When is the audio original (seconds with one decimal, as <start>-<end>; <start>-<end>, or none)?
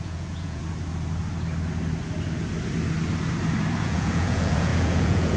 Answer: 0.6-3.8